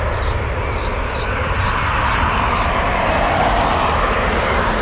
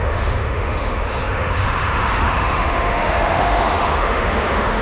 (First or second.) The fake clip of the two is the second